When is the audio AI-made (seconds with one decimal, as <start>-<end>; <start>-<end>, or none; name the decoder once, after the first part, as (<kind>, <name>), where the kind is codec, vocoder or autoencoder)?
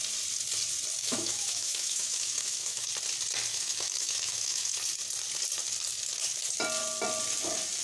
1.0-2.9 (autoencoder, DAC-VAE); 3.5-4.8